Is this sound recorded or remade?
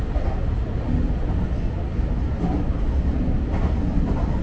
recorded